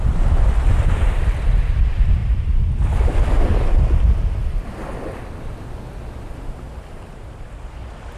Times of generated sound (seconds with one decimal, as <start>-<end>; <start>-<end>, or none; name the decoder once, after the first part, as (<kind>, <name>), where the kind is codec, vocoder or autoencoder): 0.0-2.2 (vocoder, BigVGAN v2); 7.1-8.2